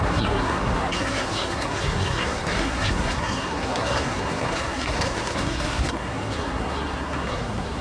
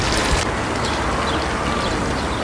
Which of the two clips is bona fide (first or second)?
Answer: second